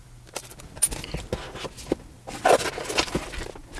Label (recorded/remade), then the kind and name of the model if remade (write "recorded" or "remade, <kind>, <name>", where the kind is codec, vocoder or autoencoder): recorded